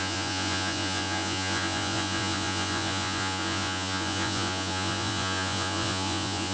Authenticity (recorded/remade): remade